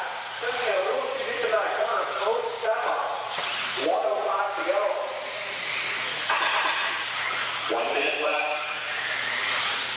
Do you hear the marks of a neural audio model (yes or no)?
yes